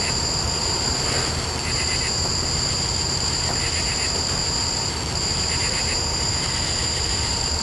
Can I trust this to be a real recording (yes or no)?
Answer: no